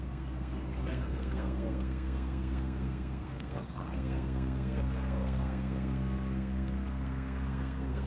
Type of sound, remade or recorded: remade